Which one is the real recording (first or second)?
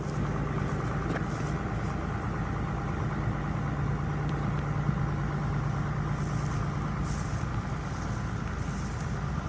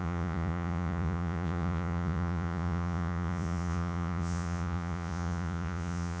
first